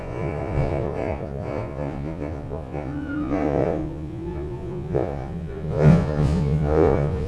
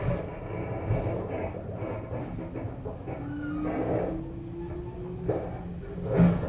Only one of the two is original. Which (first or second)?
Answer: second